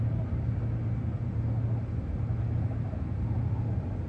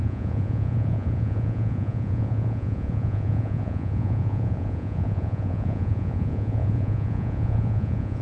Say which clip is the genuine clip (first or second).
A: first